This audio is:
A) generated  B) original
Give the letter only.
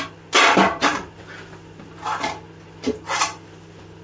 B